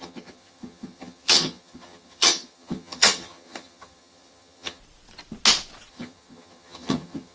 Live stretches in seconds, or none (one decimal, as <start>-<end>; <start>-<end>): 4.8-5.9

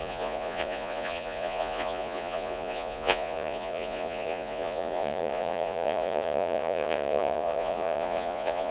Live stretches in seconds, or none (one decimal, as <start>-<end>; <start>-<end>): none

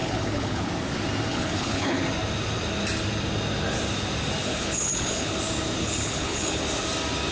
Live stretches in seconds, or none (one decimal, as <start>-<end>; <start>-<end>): 0.7-1.3; 2.0-4.4; 5.3-5.8; 6.6-7.3

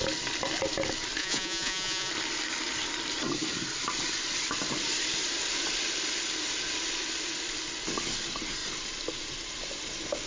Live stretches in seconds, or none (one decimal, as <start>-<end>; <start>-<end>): 0.0-1.2; 2.1-10.3

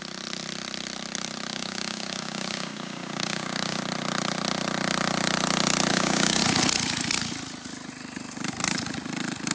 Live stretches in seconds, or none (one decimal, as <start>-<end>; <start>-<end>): 0.0-1.5; 3.8-5.9; 6.4-9.5